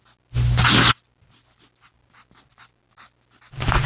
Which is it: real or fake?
real